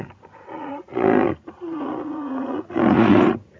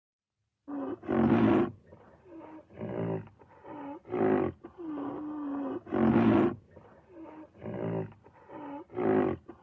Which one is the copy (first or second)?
first